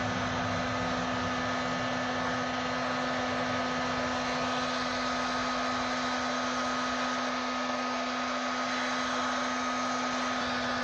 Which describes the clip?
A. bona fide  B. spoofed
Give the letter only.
A